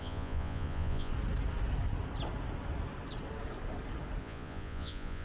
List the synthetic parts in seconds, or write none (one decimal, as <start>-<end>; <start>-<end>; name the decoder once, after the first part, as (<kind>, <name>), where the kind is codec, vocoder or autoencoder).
0.0-1.1 (vocoder, Vocos); 4.2-5.2